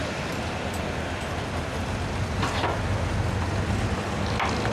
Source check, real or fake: real